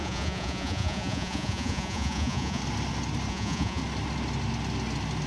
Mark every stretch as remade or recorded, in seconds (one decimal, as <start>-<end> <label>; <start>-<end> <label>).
0.0-2.6 remade; 2.6-3.3 recorded; 3.3-3.8 remade; 3.8-5.3 recorded